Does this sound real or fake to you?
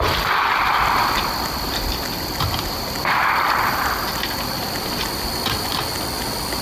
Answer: real